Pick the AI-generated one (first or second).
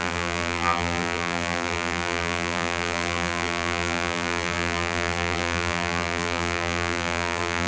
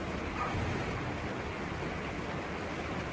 first